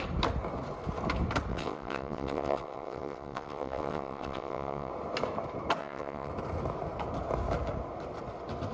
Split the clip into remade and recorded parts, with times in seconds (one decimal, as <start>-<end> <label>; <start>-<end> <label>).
0.0-1.5 recorded; 1.5-4.9 remade; 4.9-5.8 recorded; 5.8-6.3 remade; 6.3-8.7 recorded